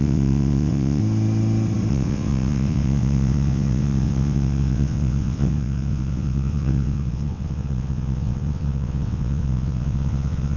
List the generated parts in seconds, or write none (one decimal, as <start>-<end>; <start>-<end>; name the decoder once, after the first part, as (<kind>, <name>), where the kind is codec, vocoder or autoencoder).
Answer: 0.0-1.0 (vocoder, WaveNeXt); 1.9-10.6